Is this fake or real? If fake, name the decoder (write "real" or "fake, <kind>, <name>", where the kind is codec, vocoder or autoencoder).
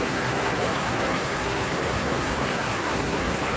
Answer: fake, codec, SNAC